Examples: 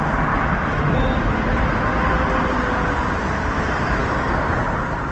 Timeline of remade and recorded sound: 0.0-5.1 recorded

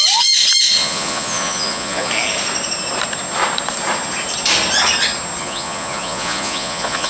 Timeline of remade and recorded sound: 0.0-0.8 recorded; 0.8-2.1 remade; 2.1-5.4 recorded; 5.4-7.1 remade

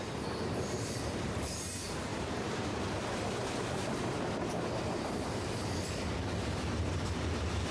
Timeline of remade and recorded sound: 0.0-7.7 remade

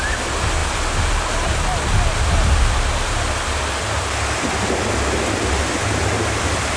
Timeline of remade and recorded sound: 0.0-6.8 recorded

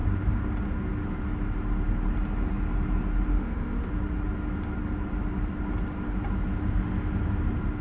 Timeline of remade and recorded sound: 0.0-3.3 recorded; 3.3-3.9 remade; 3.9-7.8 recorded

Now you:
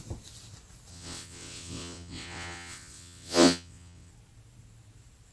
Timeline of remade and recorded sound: 0.0-0.9 recorded; 0.9-4.1 remade; 4.1-5.3 recorded